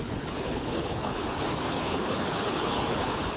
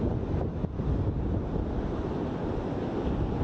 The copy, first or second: first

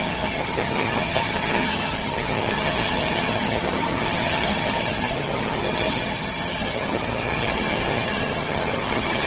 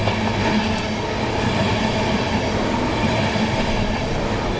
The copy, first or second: first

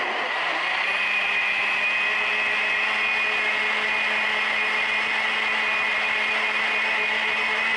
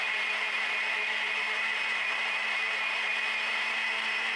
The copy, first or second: second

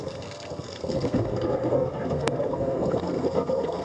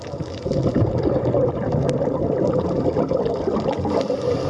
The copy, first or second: first